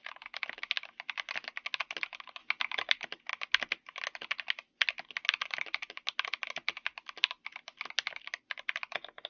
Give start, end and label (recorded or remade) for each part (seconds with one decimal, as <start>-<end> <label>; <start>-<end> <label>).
0.0-9.3 recorded